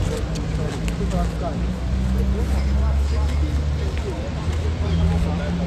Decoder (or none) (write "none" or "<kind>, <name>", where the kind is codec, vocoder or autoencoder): none